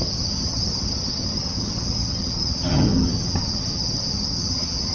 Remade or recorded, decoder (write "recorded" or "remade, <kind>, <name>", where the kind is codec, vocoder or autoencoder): remade, vocoder, HiFi-GAN